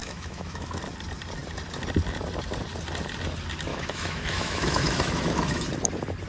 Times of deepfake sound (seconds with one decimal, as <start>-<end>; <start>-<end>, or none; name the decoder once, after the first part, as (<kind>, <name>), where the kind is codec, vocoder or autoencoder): 0.0-0.8 (autoencoder, DAC-VAE); 3.7-5.7